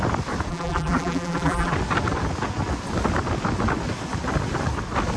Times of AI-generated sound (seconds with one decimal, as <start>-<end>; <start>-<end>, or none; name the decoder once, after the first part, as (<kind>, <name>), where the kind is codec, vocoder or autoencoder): 0.5-1.7 (vocoder, BigVGAN v2)